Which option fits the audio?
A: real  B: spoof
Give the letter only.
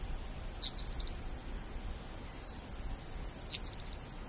A